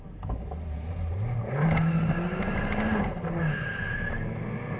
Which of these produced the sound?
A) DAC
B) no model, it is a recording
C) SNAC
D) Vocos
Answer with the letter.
B